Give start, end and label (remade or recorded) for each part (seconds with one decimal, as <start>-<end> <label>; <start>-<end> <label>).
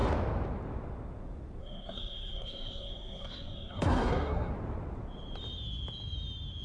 0.0-1.6 recorded; 1.6-4.5 remade; 4.5-6.6 recorded